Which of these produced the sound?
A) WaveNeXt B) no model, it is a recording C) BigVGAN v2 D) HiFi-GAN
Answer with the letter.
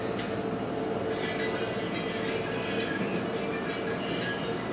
B